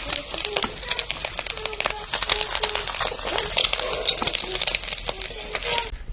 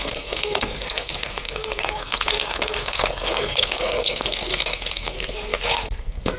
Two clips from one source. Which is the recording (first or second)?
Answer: first